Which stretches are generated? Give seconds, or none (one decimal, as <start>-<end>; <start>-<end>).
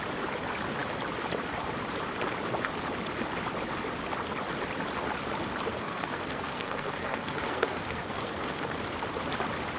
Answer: 5.7-8.8